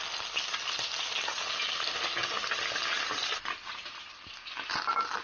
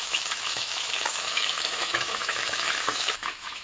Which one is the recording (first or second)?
first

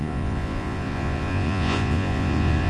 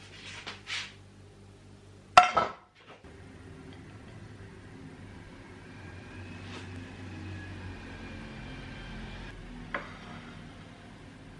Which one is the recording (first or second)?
second